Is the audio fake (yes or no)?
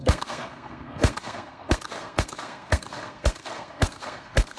yes